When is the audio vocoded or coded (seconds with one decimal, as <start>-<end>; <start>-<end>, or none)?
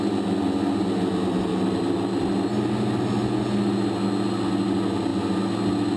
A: none